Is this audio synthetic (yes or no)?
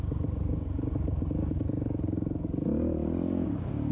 yes